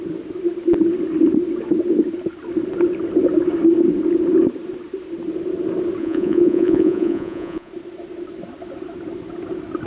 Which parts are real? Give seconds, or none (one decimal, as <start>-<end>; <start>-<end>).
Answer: 0.0-6.0; 7.7-9.9